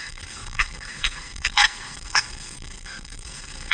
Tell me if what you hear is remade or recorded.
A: remade